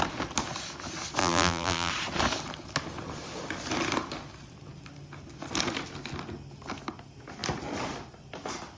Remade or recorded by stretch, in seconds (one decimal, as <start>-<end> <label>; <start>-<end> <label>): 0.0-1.2 recorded; 1.2-1.9 remade; 1.9-8.8 recorded